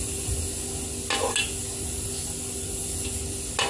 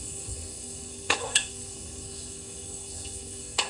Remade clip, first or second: second